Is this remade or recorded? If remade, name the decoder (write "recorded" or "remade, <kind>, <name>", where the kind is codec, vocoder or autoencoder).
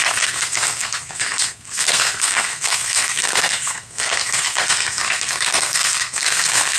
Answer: remade, codec, SNAC